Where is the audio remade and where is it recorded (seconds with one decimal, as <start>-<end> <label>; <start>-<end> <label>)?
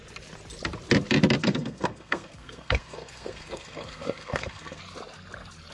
0.0-1.4 recorded; 1.4-4.8 remade; 4.8-5.7 recorded